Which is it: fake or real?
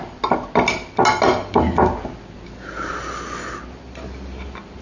real